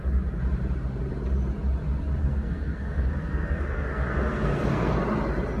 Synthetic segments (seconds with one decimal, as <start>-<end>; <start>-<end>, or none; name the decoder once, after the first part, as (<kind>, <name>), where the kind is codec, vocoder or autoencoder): 2.2-5.0 (codec, SNAC)